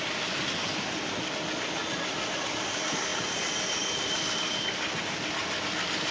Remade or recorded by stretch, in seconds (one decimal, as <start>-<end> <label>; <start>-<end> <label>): 0.0-6.1 recorded

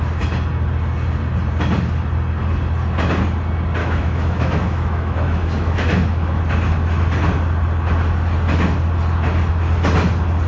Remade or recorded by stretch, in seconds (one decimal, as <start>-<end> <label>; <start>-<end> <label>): 0.0-3.8 recorded; 3.8-6.4 remade; 6.4-10.5 recorded